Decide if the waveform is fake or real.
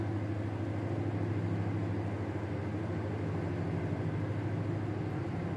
real